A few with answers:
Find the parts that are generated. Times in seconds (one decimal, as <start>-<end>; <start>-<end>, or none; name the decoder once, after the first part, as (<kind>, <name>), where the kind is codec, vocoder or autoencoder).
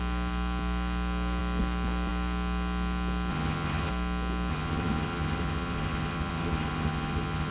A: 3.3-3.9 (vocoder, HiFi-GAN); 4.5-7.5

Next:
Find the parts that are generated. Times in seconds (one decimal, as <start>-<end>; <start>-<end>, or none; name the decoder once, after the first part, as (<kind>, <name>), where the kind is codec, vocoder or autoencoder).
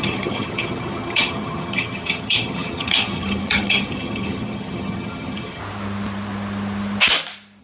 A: 0.0-5.6 (vocoder, HiFi-GAN)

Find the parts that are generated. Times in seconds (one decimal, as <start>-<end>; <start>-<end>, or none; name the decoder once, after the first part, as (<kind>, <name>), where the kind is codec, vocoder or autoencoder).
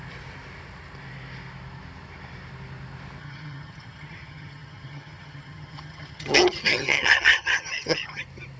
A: 3.2-8.2 (vocoder, HiFi-GAN)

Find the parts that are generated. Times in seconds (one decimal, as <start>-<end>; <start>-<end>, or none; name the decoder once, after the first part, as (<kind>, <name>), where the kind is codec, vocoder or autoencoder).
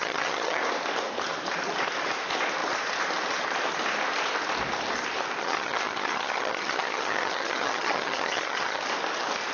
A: 0.0-0.6 (vocoder, HiFi-GAN); 5.4-8.8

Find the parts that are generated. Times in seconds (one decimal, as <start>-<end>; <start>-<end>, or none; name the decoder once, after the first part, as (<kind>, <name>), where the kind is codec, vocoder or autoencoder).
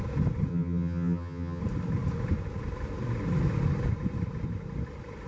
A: 0.5-1.6 (vocoder, HiFi-GAN)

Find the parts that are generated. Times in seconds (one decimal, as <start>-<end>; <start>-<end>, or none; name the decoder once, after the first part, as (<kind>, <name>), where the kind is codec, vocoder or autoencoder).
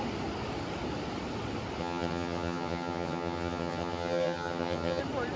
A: 1.8-5.0 (vocoder, HiFi-GAN)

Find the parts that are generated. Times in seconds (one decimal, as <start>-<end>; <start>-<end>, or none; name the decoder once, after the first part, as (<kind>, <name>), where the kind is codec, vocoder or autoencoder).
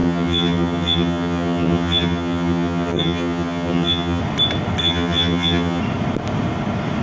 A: 0.0-4.2 (vocoder, HiFi-GAN); 4.8-5.8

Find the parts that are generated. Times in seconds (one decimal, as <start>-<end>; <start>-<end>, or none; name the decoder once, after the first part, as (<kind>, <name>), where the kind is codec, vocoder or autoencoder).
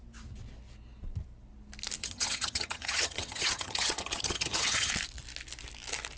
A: 2.0-4.9 (vocoder, HiFi-GAN)